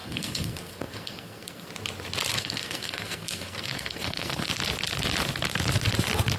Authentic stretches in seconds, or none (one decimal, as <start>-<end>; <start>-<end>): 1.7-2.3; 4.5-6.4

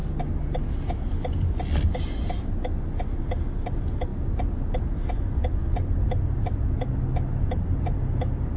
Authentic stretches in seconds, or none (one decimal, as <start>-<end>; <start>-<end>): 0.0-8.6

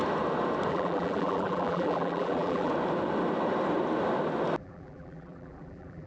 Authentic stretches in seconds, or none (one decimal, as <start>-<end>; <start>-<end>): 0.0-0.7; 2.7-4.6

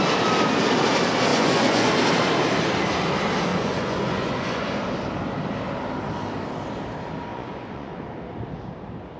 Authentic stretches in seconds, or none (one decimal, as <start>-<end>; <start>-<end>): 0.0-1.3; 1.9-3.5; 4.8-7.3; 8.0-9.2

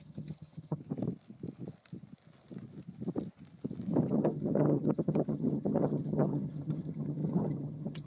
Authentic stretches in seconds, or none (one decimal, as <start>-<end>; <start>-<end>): 0.8-4.1

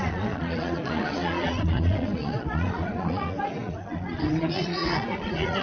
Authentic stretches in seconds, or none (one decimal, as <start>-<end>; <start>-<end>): none

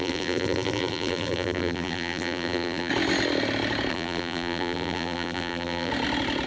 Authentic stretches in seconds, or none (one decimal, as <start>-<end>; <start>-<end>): 2.9-3.9; 5.9-6.5